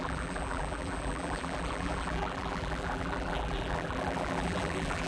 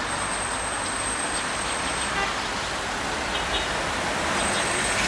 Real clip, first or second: second